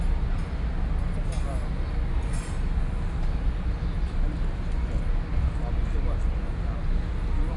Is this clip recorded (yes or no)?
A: yes